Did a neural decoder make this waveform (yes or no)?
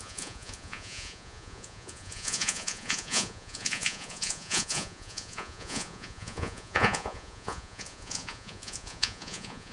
yes